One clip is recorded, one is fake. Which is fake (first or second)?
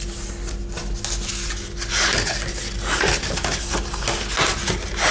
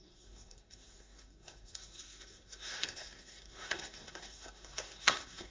second